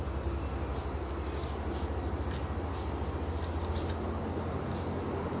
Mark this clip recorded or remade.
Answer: recorded